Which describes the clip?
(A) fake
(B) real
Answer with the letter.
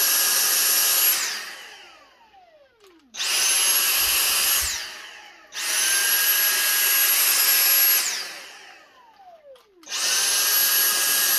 B